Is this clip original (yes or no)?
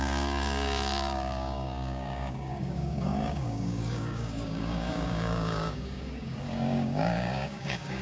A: no